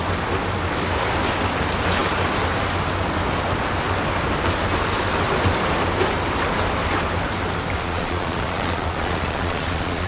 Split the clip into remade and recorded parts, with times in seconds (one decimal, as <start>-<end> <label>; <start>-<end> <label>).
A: 0.0-7.8 recorded; 7.8-10.1 remade